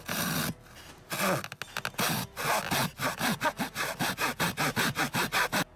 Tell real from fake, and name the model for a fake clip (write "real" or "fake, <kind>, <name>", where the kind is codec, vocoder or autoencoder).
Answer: real